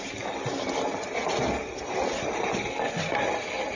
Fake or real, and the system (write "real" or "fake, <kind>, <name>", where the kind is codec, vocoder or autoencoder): real